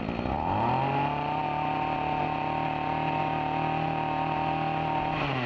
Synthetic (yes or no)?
no